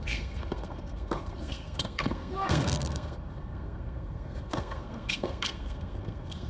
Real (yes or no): no